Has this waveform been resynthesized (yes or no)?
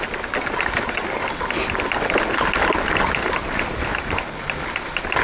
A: no